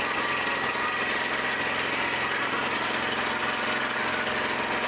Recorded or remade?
recorded